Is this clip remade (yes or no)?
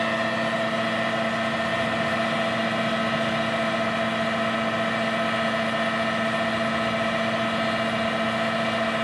no